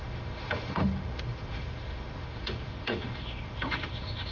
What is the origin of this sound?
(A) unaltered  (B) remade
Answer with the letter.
B